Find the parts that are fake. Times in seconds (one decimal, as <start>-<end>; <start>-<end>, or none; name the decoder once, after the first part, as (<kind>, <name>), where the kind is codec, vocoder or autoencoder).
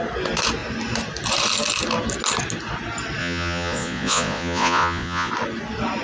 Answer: 3.2-5.3 (vocoder, Vocos)